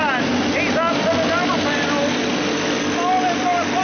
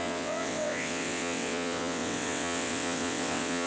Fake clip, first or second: second